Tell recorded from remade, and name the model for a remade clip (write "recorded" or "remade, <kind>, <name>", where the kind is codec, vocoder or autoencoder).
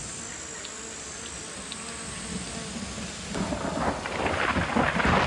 recorded